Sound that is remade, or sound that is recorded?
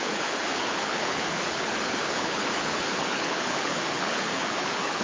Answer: remade